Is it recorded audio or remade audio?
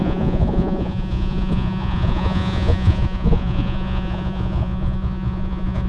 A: remade